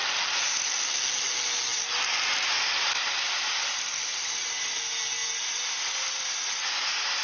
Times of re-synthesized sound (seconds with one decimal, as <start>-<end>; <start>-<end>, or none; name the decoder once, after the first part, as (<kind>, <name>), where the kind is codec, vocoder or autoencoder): none